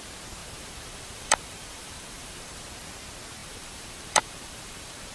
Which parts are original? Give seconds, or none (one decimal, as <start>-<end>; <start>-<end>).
0.0-0.4; 2.6-3.4